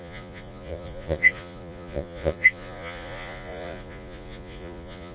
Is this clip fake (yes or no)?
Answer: yes